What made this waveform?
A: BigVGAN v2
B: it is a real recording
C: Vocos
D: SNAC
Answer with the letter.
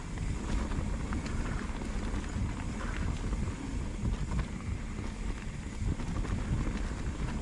B